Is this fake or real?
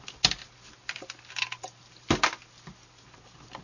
real